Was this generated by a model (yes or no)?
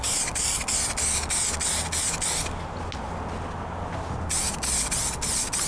no